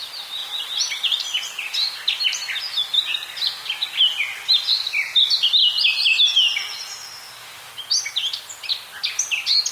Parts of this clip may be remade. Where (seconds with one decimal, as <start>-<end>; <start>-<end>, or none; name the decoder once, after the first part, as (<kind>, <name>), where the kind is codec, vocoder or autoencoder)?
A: none